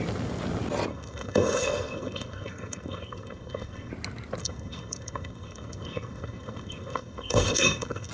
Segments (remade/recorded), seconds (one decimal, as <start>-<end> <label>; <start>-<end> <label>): 0.0-0.9 recorded; 0.9-3.9 remade; 3.9-4.4 recorded; 4.4-8.1 remade